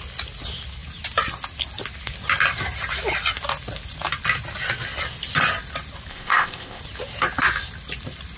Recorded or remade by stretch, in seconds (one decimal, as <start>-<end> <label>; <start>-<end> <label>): 0.0-6.1 recorded; 6.1-6.8 remade; 6.8-8.4 recorded